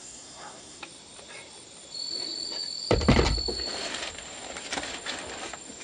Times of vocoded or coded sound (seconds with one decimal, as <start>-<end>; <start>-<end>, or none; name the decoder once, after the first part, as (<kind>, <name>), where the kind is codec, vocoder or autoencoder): 0.0-0.8 (codec, SNAC)